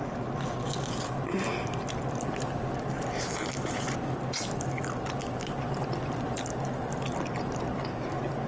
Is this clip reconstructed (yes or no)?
no